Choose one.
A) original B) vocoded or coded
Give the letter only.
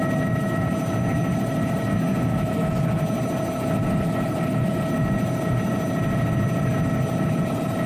A